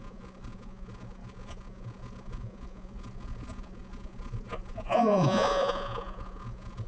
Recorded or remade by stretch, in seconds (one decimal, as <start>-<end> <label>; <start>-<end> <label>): 0.0-6.9 remade